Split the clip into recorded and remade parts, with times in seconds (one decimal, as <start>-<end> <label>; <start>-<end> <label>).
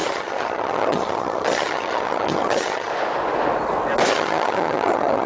0.0-2.9 remade; 2.9-4.1 recorded; 4.1-5.3 remade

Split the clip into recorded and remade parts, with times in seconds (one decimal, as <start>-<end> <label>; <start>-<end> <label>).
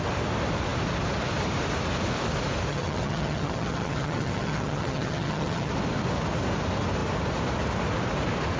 0.0-2.7 recorded; 2.7-5.7 remade; 5.7-8.6 recorded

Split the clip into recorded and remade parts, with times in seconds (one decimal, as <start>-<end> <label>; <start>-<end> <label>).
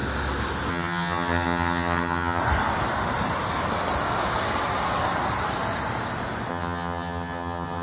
0.0-0.7 recorded; 0.7-2.4 remade; 2.4-6.5 recorded; 6.5-7.8 remade